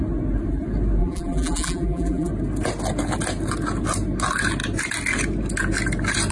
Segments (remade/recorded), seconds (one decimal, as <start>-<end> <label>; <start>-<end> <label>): 0.0-1.0 recorded; 1.0-2.3 remade; 2.3-6.3 recorded